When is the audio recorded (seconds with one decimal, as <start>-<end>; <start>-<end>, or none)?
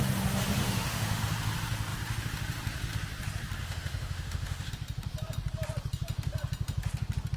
0.0-0.6; 1.2-3.6; 4.7-7.4